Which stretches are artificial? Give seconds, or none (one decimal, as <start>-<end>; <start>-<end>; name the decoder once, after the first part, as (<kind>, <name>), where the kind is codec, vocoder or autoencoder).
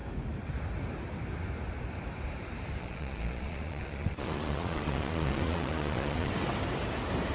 2.8-6.3 (vocoder, Vocos)